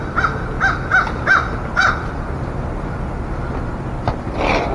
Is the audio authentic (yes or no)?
yes